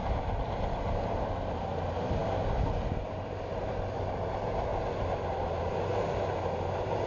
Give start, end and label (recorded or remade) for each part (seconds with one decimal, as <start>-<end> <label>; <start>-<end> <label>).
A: 0.0-7.1 recorded